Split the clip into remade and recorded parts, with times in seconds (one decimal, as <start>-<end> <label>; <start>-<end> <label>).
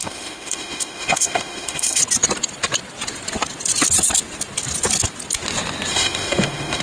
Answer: 0.0-2.0 remade; 2.0-5.9 recorded; 5.9-6.8 remade